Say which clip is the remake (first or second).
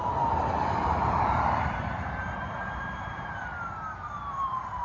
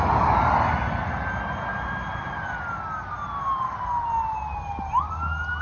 first